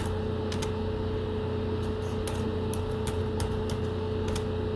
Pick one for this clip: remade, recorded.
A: recorded